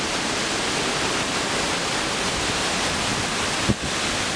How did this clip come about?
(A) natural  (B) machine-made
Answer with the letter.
A